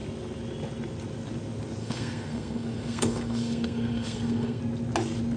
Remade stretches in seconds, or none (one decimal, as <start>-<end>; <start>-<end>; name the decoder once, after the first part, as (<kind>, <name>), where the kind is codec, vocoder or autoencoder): 1.8-4.6 (codec, SNAC)